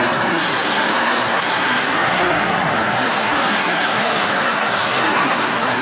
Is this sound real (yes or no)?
no